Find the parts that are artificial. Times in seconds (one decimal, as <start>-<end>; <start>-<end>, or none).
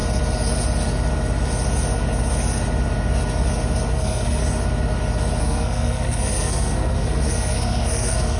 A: 3.9-4.4; 5.4-8.4